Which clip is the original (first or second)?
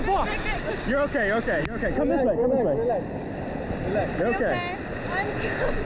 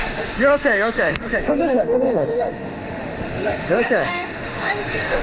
first